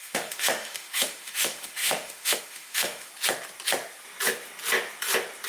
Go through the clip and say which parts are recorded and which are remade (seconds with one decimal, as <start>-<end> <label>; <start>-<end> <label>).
0.0-3.1 remade; 3.1-5.5 recorded